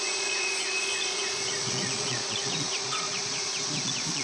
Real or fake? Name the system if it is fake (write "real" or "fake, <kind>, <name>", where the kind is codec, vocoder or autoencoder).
fake, vocoder, Vocos